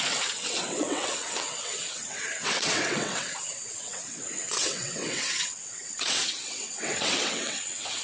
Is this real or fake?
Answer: fake